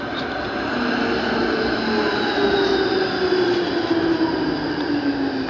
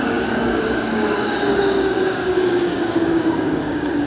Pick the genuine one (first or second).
first